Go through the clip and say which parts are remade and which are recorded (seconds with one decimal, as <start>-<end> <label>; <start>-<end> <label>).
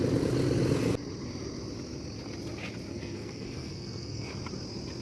0.0-2.9 recorded; 2.9-4.3 remade; 4.3-5.0 recorded